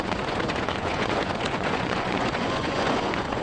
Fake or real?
fake